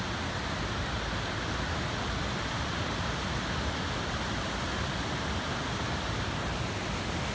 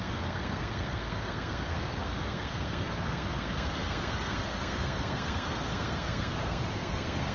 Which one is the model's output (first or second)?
second